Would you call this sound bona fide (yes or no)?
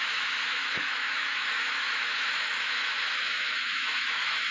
no